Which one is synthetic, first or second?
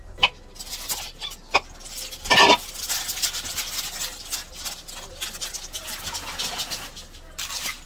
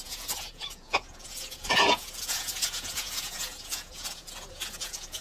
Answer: second